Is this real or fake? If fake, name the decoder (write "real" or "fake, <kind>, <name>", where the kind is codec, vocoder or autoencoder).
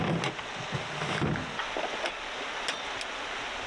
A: real